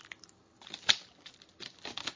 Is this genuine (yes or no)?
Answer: yes